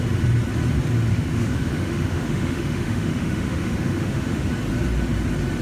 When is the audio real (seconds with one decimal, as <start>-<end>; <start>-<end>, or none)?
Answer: 0.0-1.1; 4.5-5.6